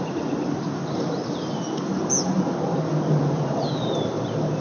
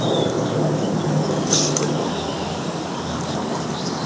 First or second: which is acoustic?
first